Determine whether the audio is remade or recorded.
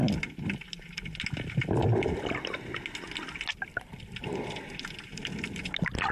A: recorded